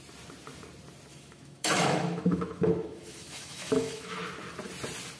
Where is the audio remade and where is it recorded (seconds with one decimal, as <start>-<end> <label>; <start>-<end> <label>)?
0.0-1.1 recorded; 1.1-4.2 remade; 4.2-5.2 recorded